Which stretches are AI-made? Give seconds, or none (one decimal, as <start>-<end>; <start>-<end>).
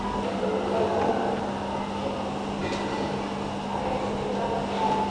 none